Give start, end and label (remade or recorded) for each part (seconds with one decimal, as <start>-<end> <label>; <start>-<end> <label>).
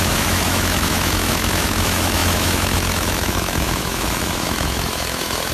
0.0-5.5 remade